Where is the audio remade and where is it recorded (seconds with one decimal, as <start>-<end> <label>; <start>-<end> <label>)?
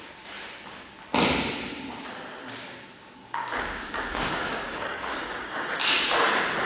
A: 0.0-3.2 recorded; 3.2-5.7 remade; 5.7-6.7 recorded